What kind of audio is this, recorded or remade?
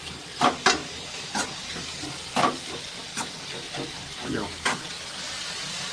remade